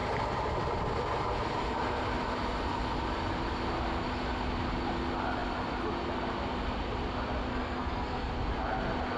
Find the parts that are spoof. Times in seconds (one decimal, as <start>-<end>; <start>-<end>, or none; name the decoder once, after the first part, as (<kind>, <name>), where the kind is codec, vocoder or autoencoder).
7.5-8.3 (codec, SNAC)